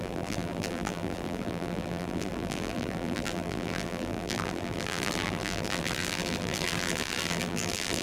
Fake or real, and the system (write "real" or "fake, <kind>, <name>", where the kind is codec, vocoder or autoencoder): fake, vocoder, BigVGAN v2